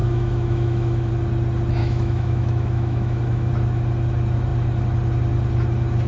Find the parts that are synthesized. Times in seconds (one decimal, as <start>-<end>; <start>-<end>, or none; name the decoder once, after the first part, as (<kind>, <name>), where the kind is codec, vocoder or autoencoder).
0.0-1.1 (autoencoder, DAC-VAE); 1.8-3.5